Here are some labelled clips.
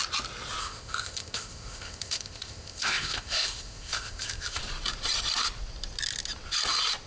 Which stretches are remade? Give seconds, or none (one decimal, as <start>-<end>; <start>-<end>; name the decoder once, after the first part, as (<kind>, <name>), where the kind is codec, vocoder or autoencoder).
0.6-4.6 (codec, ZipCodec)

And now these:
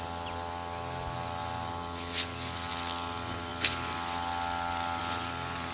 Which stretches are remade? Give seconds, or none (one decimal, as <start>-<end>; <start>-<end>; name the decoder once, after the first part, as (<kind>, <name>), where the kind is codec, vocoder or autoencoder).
none

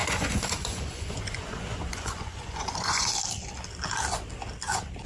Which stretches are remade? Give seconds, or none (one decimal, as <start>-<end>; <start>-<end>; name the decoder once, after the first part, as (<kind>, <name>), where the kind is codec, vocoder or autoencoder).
0.0-3.1 (vocoder, Vocos)

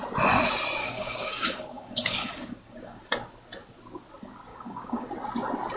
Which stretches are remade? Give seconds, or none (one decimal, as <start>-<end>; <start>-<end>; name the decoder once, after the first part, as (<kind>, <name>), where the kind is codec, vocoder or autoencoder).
0.8-3.0 (codec, DAC); 4.5-5.1

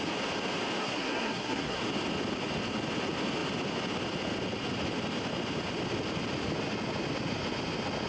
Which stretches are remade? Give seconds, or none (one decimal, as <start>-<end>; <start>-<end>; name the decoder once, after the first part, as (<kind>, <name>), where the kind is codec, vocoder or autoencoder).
0.8-1.8 (codec, SNAC)

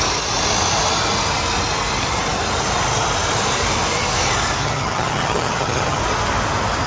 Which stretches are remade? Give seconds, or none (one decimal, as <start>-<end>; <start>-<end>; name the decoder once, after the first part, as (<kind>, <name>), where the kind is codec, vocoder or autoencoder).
4.6-6.0 (vocoder, HiFi-GAN)

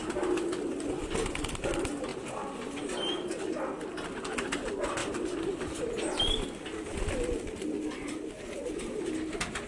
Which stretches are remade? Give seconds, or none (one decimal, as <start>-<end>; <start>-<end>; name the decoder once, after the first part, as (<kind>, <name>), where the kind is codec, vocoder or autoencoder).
5.0-5.8 (vocoder, BigVGAN v2); 7.6-8.3

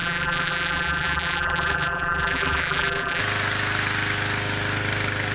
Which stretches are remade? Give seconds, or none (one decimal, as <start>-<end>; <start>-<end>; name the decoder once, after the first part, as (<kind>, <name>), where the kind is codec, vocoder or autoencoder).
0.0-3.2 (vocoder, BigVGAN v2)